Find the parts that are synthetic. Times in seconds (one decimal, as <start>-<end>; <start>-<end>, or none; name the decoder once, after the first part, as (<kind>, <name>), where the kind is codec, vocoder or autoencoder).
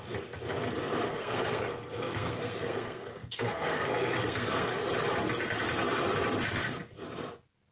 1.1-4.7 (codec, SNAC)